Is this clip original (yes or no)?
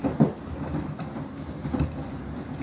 no